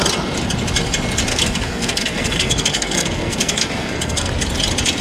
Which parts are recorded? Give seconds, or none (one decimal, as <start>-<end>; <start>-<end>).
0.0-1.3; 4.3-5.0